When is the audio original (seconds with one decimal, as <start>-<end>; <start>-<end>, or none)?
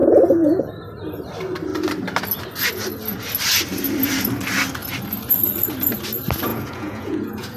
0.7-6.5